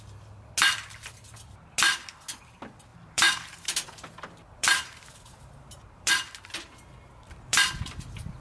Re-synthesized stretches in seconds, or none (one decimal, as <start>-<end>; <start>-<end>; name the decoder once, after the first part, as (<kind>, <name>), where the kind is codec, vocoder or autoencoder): 2.9-6.1 (vocoder, BigVGAN v2); 7.5-8.4